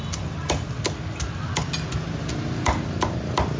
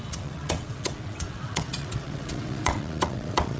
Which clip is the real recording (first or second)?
first